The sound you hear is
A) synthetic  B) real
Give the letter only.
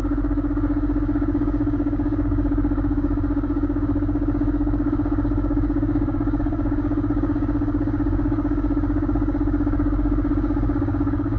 A